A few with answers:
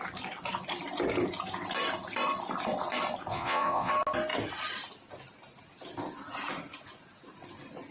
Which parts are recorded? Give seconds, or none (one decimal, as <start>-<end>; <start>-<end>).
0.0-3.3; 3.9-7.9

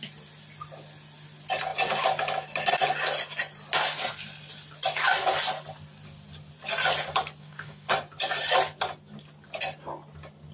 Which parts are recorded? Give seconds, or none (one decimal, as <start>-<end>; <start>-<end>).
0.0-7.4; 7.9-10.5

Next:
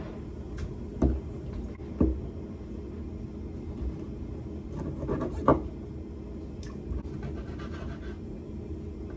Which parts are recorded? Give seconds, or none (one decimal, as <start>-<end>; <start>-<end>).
0.0-9.2

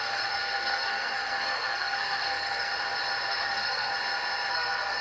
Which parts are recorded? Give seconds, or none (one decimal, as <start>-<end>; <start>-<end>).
2.7-3.3; 3.9-4.5

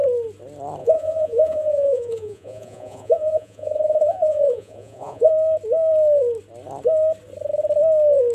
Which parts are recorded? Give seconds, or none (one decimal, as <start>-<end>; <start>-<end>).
0.0-0.8; 5.3-8.3

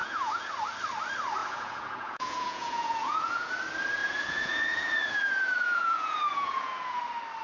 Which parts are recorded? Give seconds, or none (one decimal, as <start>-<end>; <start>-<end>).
0.5-1.4; 3.5-4.0; 7.0-7.4